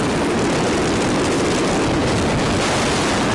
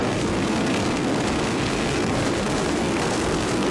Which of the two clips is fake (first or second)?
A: second